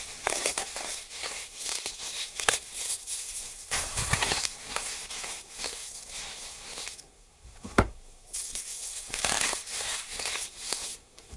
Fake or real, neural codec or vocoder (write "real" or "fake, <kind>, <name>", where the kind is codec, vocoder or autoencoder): fake, codec, SNAC